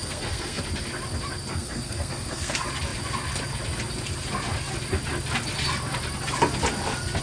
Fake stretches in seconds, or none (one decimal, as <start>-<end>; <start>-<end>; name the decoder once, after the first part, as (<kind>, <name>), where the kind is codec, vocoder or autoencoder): 0.0-0.6 (codec, SNAC); 1.5-2.5